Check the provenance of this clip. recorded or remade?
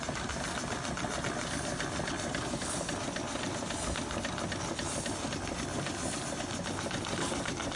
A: recorded